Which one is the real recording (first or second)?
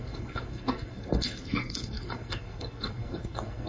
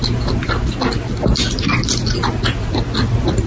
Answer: second